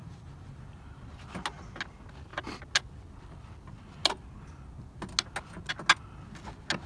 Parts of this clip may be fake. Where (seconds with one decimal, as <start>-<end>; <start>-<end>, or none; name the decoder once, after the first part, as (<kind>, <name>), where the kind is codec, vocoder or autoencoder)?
0.0-0.6 (vocoder, BigVGAN v2)